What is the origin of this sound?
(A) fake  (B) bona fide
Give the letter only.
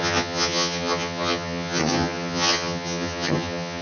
A